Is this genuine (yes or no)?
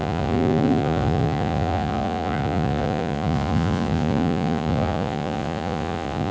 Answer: no